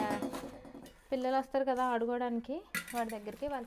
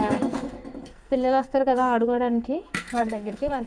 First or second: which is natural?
first